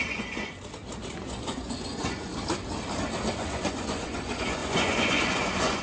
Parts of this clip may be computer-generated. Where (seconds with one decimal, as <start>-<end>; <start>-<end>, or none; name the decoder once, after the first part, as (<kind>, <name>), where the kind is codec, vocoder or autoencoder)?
0.0-0.6 (vocoder, Vocos); 1.1-2.3; 3.3-5.8